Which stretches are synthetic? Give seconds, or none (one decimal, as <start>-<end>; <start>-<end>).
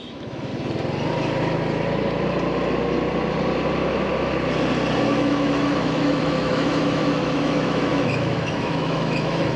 0.0-0.5; 5.0-9.6